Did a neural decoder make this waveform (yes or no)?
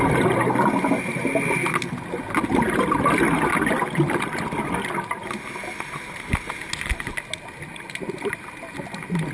no